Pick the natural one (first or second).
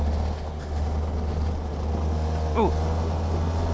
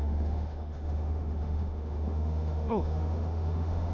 first